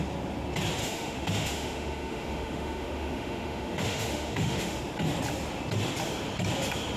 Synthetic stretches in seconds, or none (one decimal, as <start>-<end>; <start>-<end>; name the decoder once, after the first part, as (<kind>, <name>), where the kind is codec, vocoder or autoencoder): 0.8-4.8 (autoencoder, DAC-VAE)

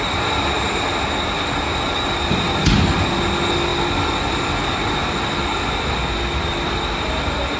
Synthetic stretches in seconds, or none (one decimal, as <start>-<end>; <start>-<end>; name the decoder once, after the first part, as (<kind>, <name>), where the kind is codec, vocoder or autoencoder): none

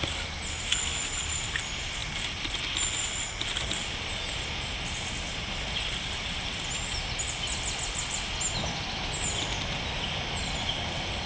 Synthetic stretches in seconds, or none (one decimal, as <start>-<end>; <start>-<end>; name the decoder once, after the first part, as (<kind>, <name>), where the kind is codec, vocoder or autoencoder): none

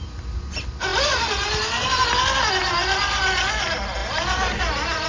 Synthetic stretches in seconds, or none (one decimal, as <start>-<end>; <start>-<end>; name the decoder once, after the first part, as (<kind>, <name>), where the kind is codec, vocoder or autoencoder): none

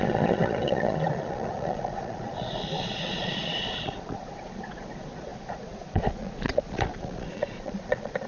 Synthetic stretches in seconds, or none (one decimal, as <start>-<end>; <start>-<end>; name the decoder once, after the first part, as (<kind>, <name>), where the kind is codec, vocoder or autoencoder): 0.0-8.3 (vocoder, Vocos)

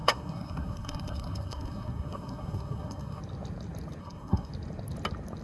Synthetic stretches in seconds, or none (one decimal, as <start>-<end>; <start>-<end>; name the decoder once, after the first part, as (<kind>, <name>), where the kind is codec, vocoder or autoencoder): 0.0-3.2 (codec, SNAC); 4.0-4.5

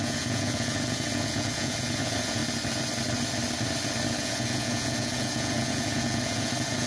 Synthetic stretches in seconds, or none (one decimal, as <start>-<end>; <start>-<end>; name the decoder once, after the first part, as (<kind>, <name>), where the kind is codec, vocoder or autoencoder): 0.0-2.4 (vocoder, Vocos); 4.2-6.9